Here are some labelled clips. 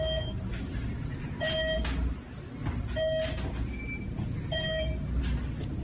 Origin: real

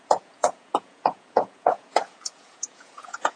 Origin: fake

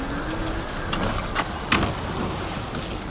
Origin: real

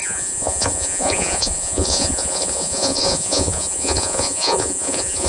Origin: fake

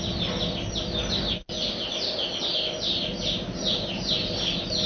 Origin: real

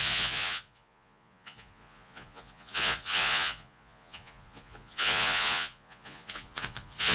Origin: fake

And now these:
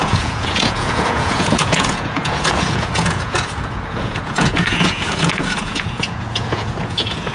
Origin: fake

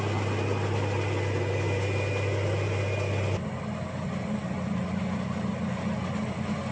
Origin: real